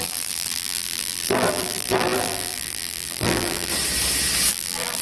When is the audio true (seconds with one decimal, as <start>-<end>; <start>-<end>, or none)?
3.7-4.5